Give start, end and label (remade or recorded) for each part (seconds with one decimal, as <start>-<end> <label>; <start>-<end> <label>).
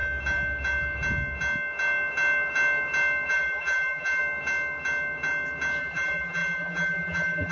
0.0-3.3 recorded; 3.3-4.2 remade; 4.2-5.8 recorded; 5.8-7.5 remade